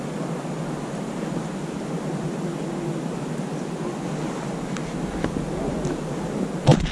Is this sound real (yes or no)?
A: yes